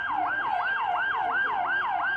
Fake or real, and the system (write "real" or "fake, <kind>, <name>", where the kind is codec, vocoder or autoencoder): real